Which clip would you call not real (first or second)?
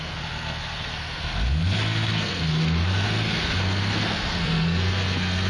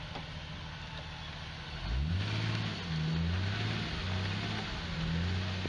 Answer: first